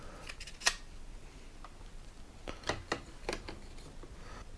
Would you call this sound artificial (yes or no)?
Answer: no